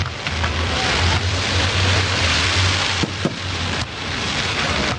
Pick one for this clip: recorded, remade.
remade